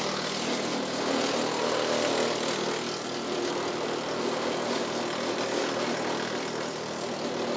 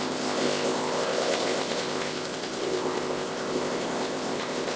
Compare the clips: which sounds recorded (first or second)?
first